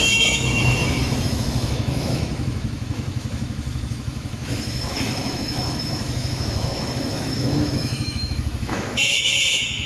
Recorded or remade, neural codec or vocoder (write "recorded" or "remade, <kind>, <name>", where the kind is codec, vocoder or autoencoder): remade, autoencoder, DAC-VAE